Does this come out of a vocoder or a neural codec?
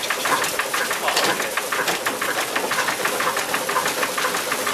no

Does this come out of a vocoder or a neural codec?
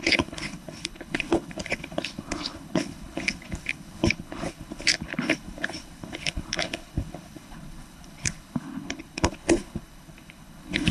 yes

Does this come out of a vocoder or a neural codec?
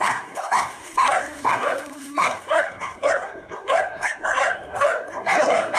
yes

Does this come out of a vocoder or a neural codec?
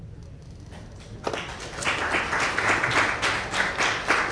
no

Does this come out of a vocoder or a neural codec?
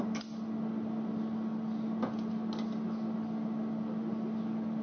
no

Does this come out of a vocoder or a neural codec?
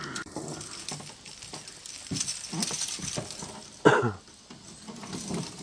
no